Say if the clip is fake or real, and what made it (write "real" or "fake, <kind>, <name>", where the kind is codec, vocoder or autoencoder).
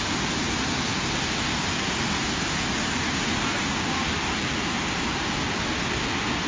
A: real